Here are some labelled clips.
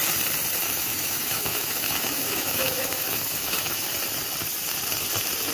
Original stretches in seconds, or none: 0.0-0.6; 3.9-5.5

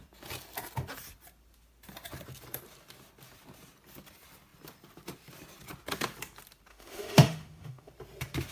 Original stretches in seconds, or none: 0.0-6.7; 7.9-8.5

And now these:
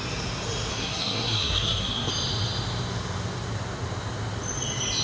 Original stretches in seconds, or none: 0.0-0.7; 2.1-5.0

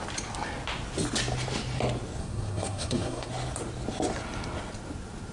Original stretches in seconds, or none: 0.0-2.2; 3.3-5.3

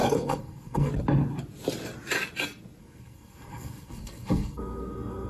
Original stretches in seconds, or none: 0.9-2.8

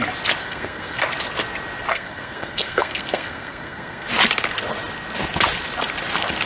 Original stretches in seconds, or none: 0.0-0.4; 1.0-1.9; 4.1-6.5

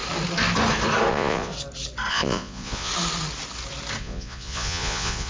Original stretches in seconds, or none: 0.0-1.1; 1.5-2.1; 2.9-4.0

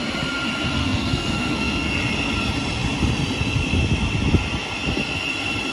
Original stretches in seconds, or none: 0.0-0.8; 2.0-5.7